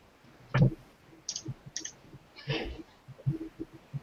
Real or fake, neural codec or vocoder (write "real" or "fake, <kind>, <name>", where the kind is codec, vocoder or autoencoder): real